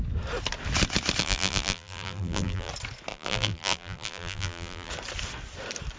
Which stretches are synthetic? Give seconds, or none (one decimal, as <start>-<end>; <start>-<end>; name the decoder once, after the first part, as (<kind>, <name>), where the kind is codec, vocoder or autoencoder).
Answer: 1.2-2.7 (vocoder, BigVGAN v2); 3.1-4.9